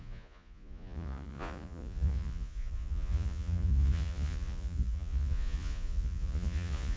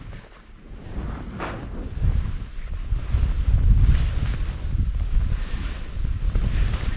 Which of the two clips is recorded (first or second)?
second